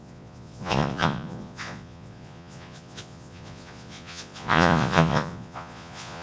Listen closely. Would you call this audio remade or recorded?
remade